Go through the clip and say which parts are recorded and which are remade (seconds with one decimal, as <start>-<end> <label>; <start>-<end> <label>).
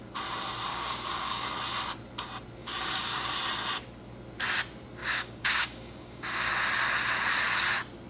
0.0-0.7 recorded; 0.7-1.5 remade; 1.5-2.6 recorded; 2.6-3.3 remade; 3.3-5.0 recorded; 5.0-6.5 remade; 6.5-8.1 recorded